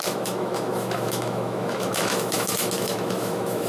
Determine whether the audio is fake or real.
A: fake